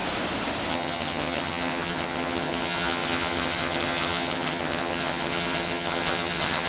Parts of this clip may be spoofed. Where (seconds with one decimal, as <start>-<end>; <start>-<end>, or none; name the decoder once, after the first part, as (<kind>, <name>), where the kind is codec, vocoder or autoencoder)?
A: 0.7-6.7 (vocoder, HiFi-GAN)